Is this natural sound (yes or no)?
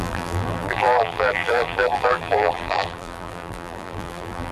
no